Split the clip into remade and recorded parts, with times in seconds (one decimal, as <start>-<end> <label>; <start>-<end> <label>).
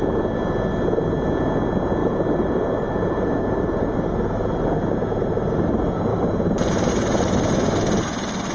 0.0-2.0 recorded; 2.0-3.4 remade; 3.4-6.1 recorded; 6.1-6.9 remade; 6.9-8.5 recorded